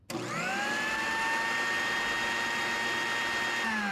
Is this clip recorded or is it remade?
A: recorded